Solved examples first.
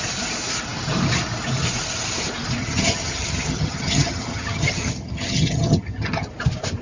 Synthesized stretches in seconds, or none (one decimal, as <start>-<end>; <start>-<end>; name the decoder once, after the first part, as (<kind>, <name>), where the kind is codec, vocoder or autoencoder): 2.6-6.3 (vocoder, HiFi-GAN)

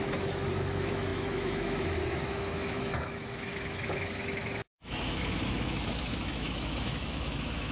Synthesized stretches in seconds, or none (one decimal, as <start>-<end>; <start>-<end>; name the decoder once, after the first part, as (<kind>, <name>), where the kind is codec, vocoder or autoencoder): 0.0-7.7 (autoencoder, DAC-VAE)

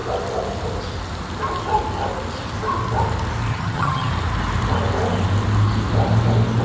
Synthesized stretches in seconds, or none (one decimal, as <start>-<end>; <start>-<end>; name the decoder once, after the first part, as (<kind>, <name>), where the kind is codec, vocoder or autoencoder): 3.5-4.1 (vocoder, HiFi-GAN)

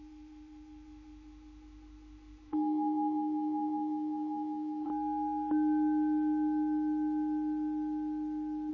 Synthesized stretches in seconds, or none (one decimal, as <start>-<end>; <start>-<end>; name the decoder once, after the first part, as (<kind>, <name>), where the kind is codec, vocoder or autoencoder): 0.0-4.9 (autoencoder, DAC-VAE)

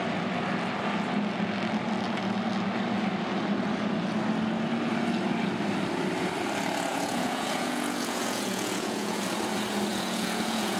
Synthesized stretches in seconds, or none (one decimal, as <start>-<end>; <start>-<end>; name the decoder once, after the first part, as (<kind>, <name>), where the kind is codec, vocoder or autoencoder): 6.9-9.2 (vocoder, Vocos); 9.9-10.8

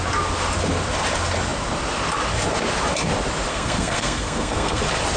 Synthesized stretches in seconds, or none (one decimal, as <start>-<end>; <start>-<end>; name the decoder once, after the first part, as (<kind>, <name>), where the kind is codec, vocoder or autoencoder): 3.5-4.8 (codec, SNAC)

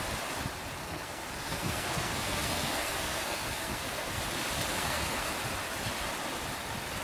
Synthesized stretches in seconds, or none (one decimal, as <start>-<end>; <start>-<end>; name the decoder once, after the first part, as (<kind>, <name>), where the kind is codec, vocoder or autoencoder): 0.8-4.2 (codec, SNAC); 4.7-5.3

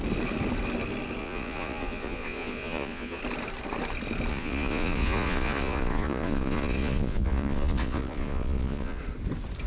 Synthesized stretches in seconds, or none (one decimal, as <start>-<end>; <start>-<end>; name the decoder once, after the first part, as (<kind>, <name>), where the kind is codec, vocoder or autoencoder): 1.2-3.2 (vocoder, Vocos); 4.3-9.0